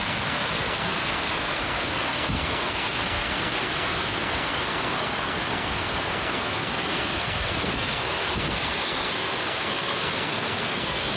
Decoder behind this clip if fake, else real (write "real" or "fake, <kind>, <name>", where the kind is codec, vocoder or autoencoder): fake, codec, SNAC